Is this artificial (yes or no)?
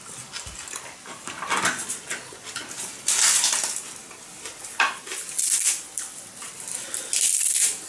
no